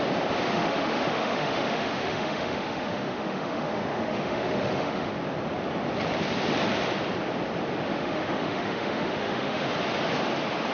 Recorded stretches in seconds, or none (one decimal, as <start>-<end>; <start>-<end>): 0.0-0.5; 5.1-7.9; 9.7-10.7